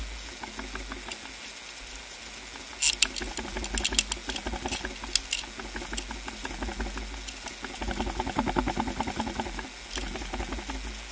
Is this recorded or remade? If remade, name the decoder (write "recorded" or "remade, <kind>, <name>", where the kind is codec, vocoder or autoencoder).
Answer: recorded